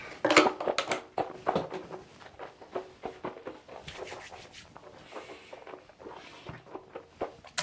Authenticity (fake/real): real